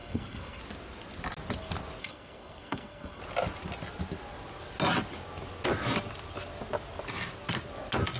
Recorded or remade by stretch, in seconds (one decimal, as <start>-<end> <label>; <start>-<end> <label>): 0.0-0.6 remade; 0.6-2.0 recorded; 2.0-3.2 remade; 3.2-8.2 recorded